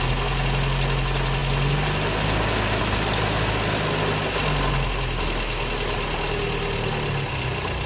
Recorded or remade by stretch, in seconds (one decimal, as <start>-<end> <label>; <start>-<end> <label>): 0.0-7.9 recorded